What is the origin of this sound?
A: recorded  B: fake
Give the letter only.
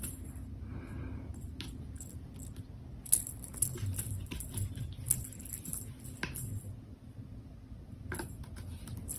A